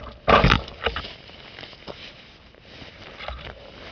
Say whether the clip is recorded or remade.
recorded